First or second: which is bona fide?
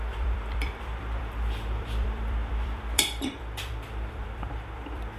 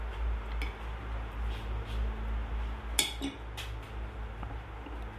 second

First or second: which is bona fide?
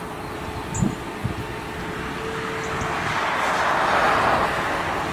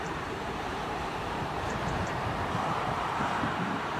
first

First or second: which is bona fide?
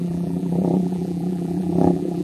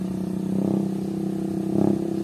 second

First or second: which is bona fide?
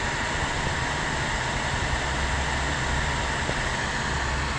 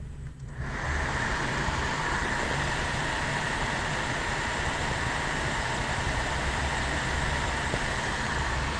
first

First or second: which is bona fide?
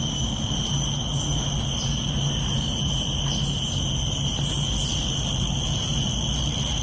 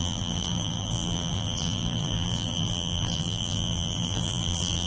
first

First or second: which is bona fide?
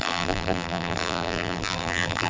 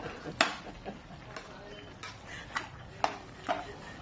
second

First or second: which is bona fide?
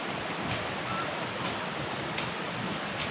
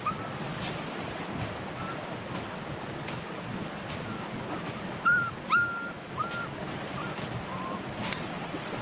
first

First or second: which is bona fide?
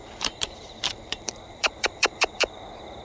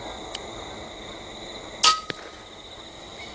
second